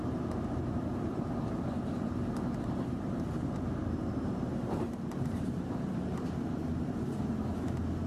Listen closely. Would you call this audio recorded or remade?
remade